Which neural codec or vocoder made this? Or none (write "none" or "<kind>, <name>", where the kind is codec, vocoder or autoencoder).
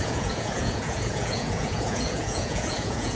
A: vocoder, Vocos